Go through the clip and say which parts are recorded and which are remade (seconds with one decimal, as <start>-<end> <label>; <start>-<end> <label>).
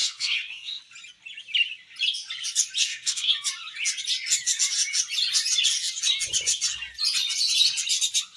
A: 0.0-0.8 remade; 0.8-2.8 recorded; 2.8-3.3 remade; 3.3-8.4 recorded